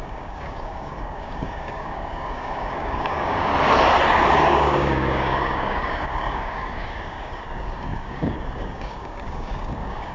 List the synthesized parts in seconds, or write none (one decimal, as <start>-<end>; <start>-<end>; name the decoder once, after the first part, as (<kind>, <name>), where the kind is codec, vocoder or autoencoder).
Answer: 0.0-3.5 (codec, DAC); 4.4-10.1